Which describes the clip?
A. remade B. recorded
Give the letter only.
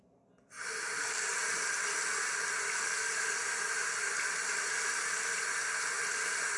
B